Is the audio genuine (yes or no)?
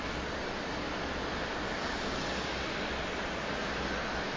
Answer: yes